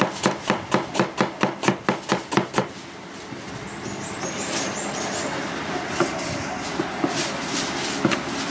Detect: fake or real real